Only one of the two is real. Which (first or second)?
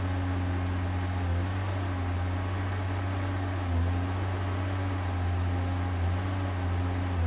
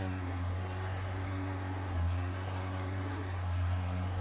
first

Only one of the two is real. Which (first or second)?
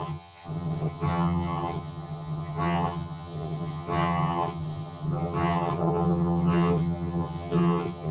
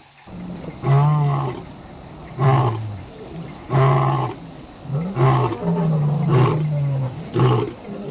second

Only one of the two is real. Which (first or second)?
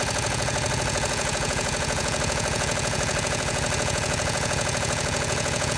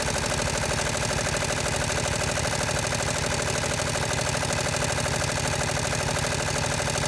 second